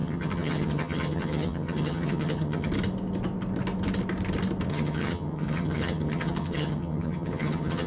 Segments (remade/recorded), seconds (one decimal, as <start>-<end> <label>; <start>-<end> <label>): 0.0-2.7 remade; 2.7-4.7 recorded; 4.7-7.9 remade